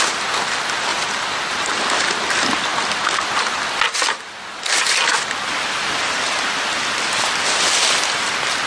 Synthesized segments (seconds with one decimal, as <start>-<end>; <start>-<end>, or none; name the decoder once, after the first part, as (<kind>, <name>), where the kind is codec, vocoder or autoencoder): 0.9-1.8 (vocoder, BigVGAN v2)